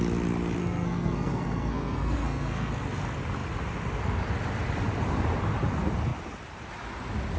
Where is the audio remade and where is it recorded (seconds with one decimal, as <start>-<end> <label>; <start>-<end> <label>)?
0.0-0.6 recorded; 0.6-2.7 remade; 2.7-7.4 recorded